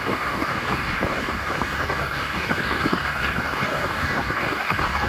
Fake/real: fake